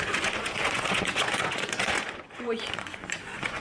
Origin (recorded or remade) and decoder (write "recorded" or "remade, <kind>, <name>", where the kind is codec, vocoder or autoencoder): remade, vocoder, Vocos